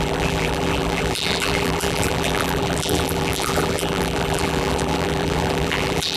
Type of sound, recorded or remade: remade